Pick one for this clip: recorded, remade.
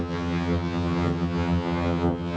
remade